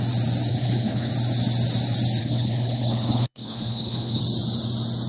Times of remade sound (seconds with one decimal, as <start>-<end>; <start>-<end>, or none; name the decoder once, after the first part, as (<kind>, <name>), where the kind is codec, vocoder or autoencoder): 0.5-1.1 (codec, HILCodec); 2.2-4.2